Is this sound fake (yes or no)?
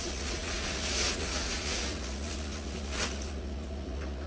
yes